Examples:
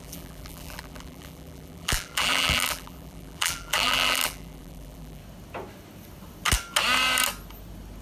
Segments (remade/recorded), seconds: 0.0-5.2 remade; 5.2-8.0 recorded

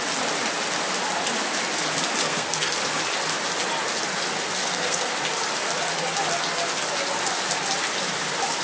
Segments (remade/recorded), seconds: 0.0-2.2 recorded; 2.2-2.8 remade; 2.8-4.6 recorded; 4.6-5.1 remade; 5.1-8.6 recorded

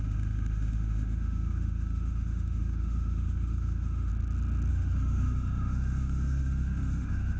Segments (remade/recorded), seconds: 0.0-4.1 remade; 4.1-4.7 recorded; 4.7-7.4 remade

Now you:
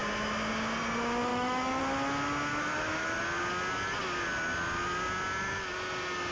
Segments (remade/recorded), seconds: 0.0-1.3 recorded; 1.3-1.8 remade; 1.8-2.5 recorded; 2.5-3.2 remade; 3.2-6.3 recorded

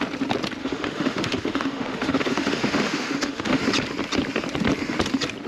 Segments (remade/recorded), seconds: 0.0-0.6 recorded; 0.6-3.6 remade; 3.6-5.5 recorded

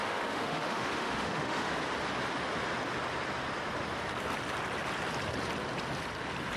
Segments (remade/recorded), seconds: 0.0-1.7 remade; 1.7-6.6 recorded